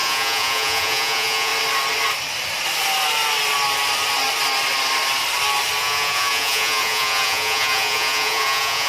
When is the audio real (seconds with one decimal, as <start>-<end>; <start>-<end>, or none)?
1.5-5.8